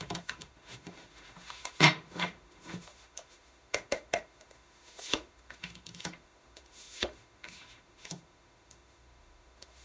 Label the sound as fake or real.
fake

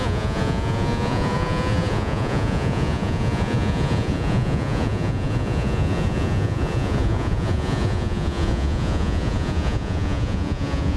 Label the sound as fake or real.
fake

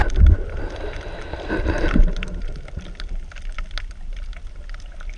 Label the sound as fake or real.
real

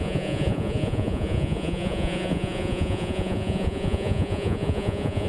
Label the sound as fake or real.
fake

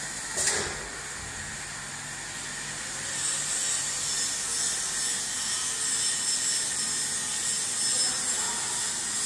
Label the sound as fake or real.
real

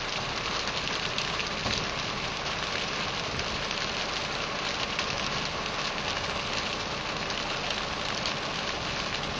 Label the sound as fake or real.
real